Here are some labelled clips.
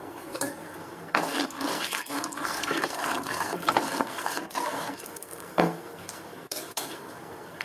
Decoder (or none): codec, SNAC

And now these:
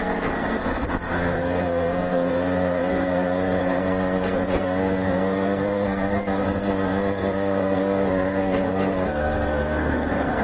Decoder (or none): codec, SNAC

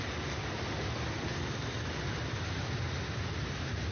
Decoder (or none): none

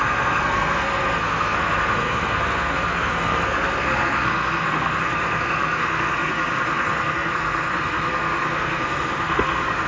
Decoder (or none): codec, SNAC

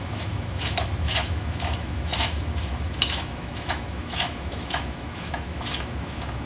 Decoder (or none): autoencoder, DAC-VAE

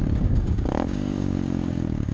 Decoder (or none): codec, DAC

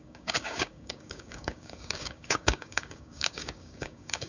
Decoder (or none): codec, DAC